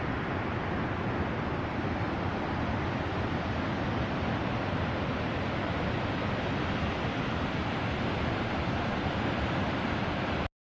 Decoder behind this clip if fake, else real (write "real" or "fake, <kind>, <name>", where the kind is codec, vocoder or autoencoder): real